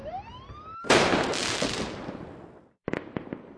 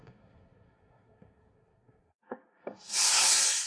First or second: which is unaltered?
first